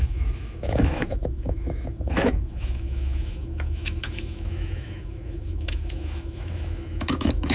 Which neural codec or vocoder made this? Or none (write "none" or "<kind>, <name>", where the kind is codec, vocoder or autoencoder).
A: autoencoder, DAC-VAE